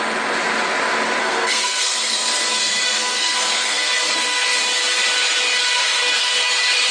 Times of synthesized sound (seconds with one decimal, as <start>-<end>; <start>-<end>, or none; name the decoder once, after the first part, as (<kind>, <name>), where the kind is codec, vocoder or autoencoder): 1.2-4.6 (codec, SNAC); 5.6-6.5

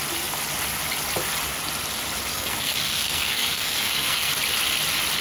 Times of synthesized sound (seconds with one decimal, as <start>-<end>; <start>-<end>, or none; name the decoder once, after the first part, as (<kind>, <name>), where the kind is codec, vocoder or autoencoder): 2.3-4.3 (codec, SNAC)

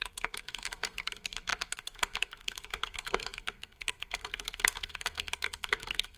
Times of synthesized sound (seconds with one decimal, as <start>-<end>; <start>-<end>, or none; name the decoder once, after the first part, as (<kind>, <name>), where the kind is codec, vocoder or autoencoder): 0.0-6.2 (codec, SNAC)

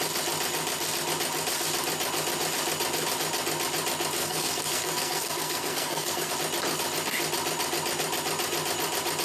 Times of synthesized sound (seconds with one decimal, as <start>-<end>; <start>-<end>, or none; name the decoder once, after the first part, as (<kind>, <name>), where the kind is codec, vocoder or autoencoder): 4.2-6.3 (codec, SNAC)

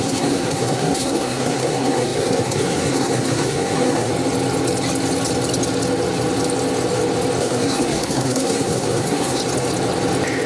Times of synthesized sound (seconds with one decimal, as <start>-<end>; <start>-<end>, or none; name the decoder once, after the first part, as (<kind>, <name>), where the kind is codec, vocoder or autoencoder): 0.0-4.1 (codec, SNAC); 7.4-9.4